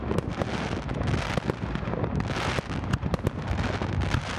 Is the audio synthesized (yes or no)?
no